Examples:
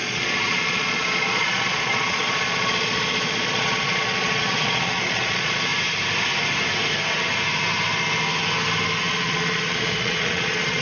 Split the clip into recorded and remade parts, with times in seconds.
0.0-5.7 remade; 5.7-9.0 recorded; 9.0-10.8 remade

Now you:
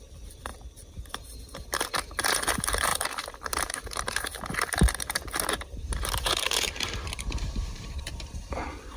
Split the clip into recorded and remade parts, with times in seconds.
0.0-0.5 remade; 0.5-1.1 recorded; 1.1-9.0 remade

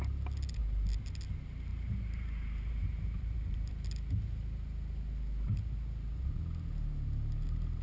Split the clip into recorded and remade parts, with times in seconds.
0.0-1.7 recorded; 1.7-3.7 remade; 3.7-7.8 recorded

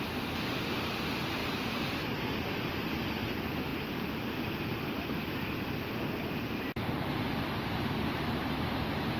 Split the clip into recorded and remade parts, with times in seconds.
0.0-1.4 recorded; 1.4-2.0 remade; 2.0-3.7 recorded; 3.7-4.5 remade; 4.5-9.2 recorded

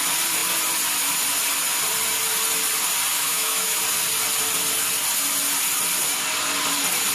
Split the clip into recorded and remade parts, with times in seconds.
0.0-3.1 recorded; 3.1-3.8 remade; 3.8-7.1 recorded

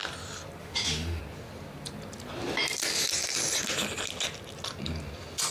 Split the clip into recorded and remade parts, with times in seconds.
0.0-0.6 recorded; 0.6-1.2 remade; 1.2-5.5 recorded